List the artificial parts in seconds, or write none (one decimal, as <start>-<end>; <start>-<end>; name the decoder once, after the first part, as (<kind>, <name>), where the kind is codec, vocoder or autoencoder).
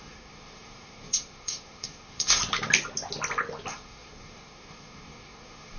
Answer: 0.0-2.4 (codec, SNAC); 3.7-5.8